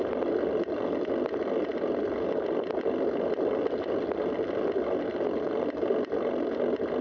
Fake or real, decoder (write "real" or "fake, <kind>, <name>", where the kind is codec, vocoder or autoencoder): real